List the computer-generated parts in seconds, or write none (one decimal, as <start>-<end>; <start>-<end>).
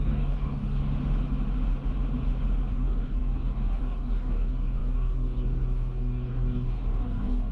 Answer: 0.0-0.8; 2.7-7.5